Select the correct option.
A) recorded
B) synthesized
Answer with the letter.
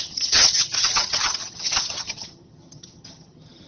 B